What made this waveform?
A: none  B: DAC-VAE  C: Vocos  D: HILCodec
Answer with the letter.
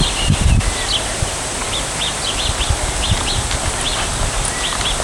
A